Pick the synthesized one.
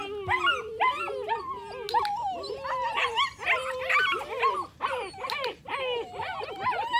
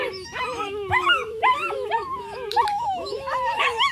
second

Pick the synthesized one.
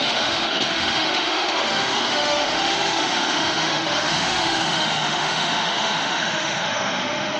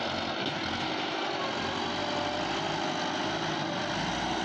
first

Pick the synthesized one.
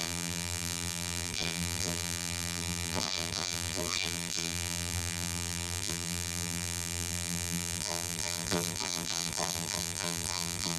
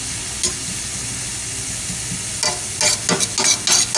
first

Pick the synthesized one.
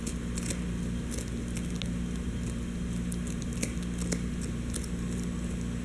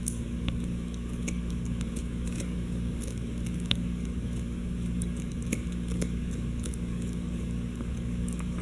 second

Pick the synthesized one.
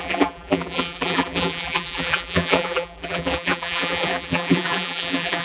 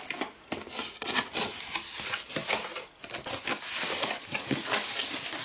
first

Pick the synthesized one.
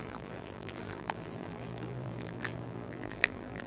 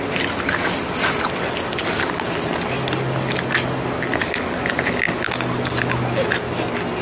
first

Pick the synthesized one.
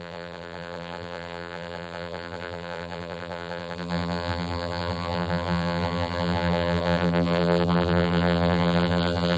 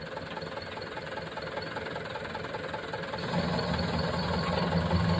first